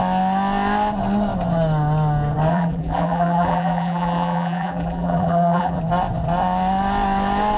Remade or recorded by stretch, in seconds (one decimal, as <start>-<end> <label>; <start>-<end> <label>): 0.0-2.5 recorded; 2.5-5.8 remade; 5.8-7.6 recorded